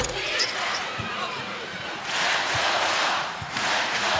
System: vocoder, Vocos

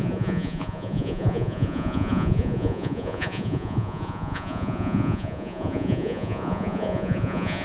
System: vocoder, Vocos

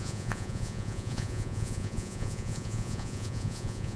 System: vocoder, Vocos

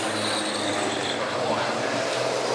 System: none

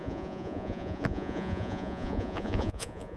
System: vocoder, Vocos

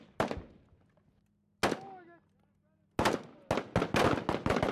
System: none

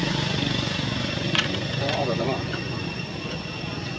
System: vocoder, Vocos